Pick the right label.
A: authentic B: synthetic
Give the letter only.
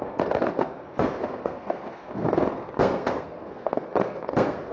B